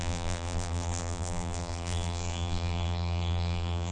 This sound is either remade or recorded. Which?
remade